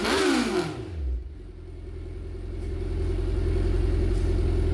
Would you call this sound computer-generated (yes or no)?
no